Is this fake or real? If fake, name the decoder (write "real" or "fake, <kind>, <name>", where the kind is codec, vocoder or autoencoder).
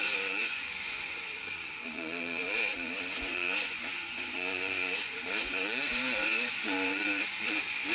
fake, vocoder, Vocos